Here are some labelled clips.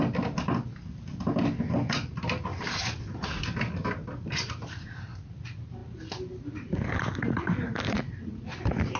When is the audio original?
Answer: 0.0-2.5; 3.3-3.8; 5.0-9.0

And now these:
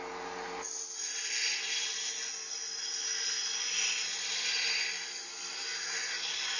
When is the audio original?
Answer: 0.0-5.7

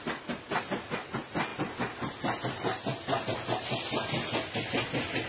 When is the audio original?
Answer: 0.0-5.3

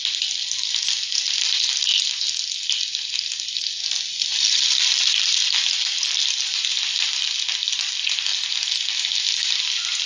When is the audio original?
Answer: 0.0-4.3; 5.6-10.1

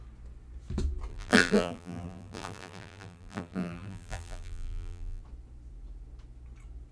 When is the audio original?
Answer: 0.0-1.1; 5.2-6.9